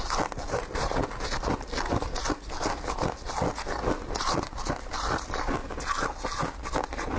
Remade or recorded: recorded